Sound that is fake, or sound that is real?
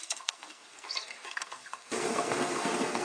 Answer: fake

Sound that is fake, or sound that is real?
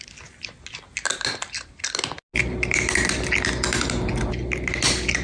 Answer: real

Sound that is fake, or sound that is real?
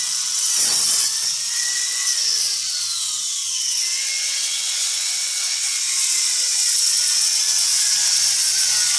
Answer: fake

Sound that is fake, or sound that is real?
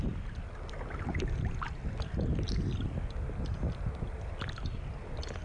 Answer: real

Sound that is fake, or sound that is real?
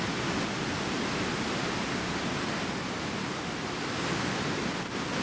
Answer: real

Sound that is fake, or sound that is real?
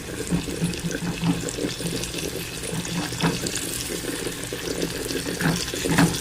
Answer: real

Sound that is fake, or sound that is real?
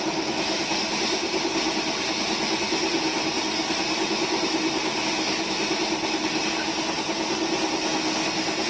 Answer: real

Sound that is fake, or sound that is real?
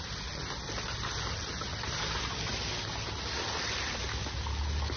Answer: real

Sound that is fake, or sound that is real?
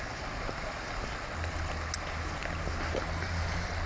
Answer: real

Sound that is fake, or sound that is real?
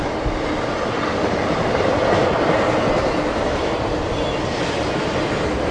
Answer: real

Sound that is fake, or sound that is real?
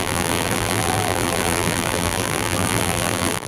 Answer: fake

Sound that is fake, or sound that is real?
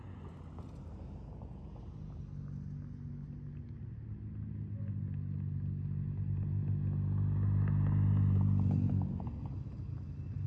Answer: real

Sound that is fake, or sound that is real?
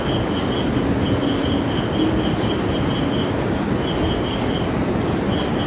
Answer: real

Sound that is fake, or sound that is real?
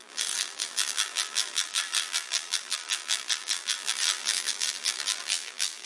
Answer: fake